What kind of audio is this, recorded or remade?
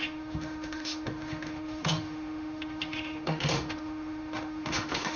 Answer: remade